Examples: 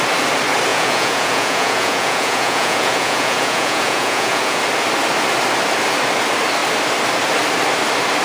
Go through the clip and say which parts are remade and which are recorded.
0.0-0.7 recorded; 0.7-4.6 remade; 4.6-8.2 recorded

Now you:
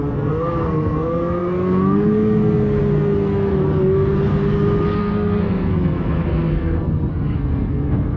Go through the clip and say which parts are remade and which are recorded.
0.0-3.5 remade; 3.5-5.0 recorded; 5.0-8.2 remade